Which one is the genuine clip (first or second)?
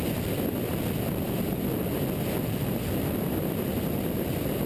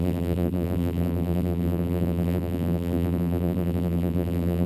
first